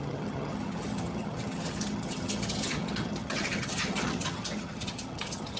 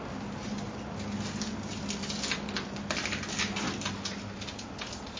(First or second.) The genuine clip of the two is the second